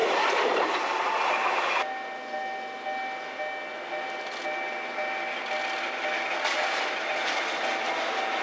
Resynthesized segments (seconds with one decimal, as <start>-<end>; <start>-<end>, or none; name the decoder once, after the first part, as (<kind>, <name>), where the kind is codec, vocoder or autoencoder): none